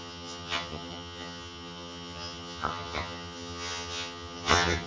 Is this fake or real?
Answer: fake